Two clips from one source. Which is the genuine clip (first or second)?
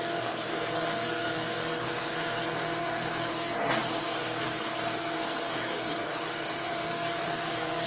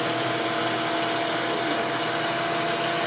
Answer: second